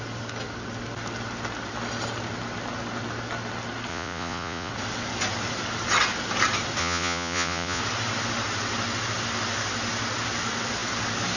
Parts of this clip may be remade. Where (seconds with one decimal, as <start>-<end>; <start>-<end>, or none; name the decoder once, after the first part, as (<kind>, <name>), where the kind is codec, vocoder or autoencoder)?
3.9-4.7 (vocoder, Vocos); 6.8-7.8